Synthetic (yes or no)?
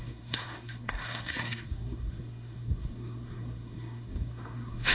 yes